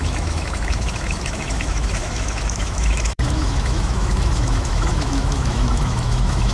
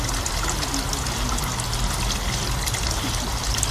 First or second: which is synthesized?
first